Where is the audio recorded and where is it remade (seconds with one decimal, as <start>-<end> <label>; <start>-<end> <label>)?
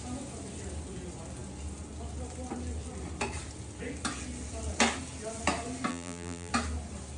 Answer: 0.0-5.9 recorded; 5.9-6.5 remade; 6.5-7.2 recorded